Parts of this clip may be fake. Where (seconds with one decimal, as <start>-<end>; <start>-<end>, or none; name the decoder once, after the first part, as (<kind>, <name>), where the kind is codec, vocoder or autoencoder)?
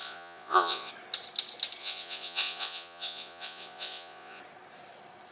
0.0-0.9 (vocoder, Vocos); 1.8-4.4